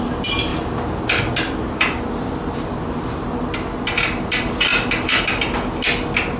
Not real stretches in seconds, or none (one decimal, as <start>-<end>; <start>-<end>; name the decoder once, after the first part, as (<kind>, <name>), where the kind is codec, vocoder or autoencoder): none